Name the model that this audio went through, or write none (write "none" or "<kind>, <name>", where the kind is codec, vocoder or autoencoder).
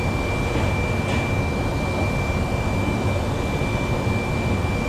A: none